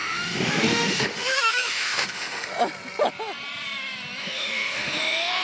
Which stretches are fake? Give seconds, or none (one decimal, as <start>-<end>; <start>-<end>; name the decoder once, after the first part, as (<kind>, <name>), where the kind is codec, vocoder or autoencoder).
0.0-2.5 (autoencoder, DAC-VAE); 4.2-5.4